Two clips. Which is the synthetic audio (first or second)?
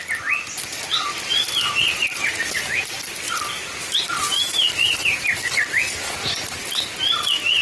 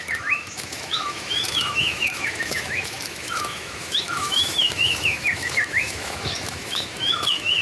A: second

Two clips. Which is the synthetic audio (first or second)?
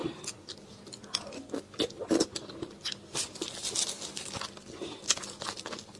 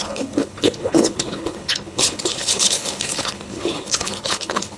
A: second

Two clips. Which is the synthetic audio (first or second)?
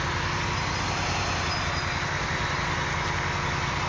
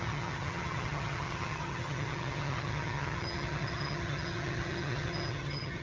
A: second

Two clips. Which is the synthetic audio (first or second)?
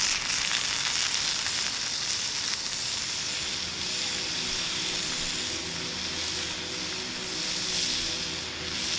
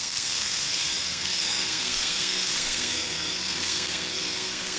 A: second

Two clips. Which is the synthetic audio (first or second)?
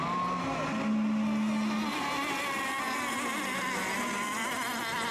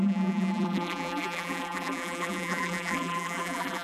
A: second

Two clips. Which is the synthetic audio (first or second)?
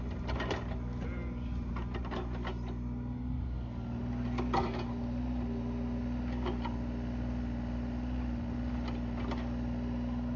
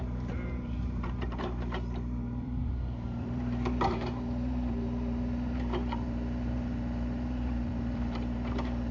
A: second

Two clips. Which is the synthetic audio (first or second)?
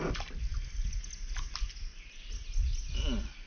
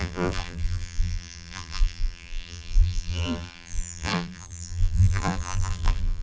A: second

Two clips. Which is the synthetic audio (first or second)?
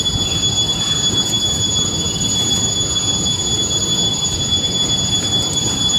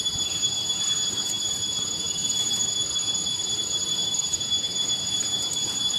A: second